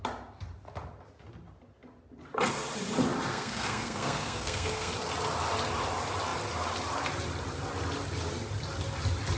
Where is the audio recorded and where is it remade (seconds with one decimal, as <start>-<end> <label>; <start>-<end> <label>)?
0.0-3.3 recorded; 3.3-4.9 remade; 4.9-9.4 recorded